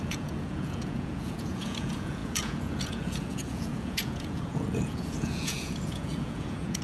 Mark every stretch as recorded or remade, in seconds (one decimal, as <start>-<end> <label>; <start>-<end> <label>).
0.0-6.8 remade